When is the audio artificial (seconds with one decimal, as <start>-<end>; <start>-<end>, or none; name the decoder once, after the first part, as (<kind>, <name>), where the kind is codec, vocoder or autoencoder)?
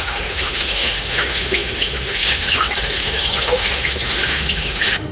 0.0-5.1 (autoencoder, DAC-VAE)